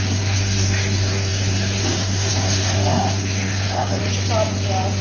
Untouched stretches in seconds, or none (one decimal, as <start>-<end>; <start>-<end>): 4.0-5.0